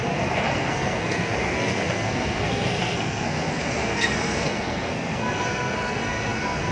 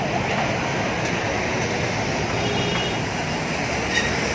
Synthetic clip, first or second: first